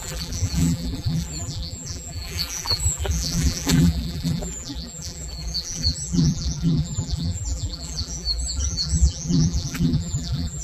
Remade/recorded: remade